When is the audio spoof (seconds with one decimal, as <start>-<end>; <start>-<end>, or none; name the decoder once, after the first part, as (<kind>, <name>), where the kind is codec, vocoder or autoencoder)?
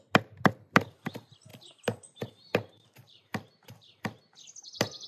1.5-4.0 (vocoder, BigVGAN v2)